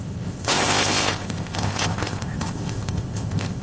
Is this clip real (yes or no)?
no